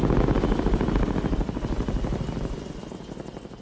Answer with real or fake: real